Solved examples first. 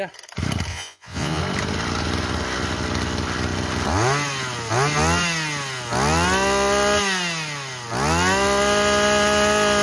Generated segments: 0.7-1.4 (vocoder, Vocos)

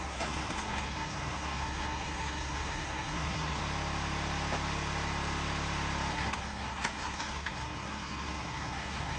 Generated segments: 0.0-3.6 (codec, SNAC); 6.1-9.2

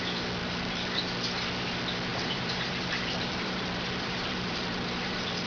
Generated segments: 0.4-1.0 (vocoder, BigVGAN v2); 2.1-5.5